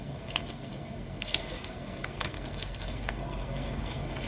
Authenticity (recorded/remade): remade